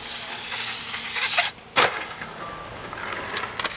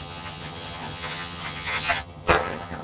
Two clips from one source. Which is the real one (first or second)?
first